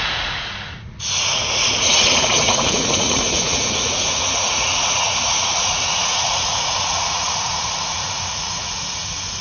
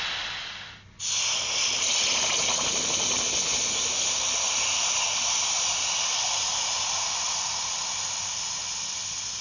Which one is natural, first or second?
second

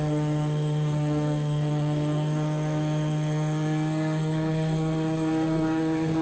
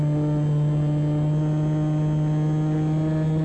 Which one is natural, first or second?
second